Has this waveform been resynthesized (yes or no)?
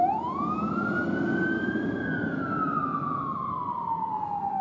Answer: no